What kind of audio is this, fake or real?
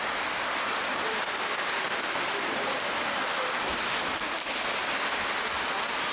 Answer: real